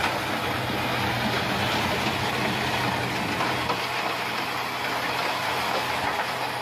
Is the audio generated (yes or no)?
no